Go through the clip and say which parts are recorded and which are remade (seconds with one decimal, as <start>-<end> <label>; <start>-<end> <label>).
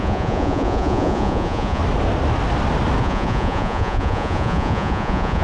0.0-1.8 remade; 1.8-3.0 recorded; 3.0-5.4 remade